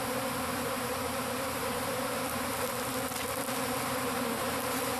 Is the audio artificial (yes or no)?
yes